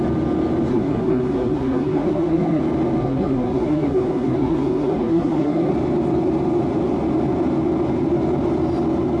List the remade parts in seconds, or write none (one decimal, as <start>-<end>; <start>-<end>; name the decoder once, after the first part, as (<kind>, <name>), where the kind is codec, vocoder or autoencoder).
0.7-2.6 (codec, SNAC); 3.0-5.7